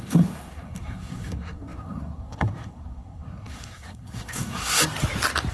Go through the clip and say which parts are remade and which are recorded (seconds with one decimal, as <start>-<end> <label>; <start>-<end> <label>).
0.0-4.8 remade; 4.8-5.5 recorded